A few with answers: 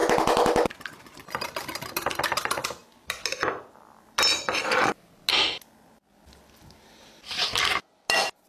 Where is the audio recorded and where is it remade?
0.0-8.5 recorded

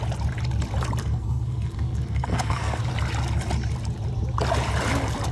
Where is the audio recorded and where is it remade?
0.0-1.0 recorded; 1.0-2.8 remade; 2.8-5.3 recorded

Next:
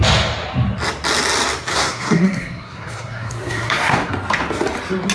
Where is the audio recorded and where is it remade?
0.0-1.7 recorded; 1.7-4.1 remade; 4.1-5.1 recorded

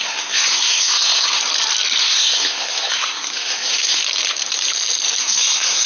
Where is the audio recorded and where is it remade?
0.0-1.4 remade; 1.4-2.0 recorded; 2.0-4.0 remade; 4.0-5.2 recorded; 5.2-5.9 remade